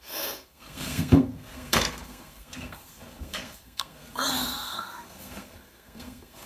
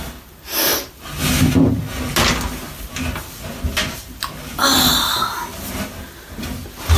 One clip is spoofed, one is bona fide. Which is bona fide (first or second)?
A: second